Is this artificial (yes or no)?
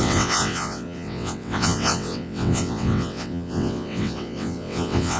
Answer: yes